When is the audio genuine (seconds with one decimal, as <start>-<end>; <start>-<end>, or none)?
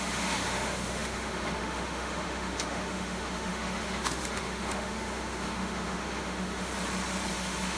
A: 6.7-7.3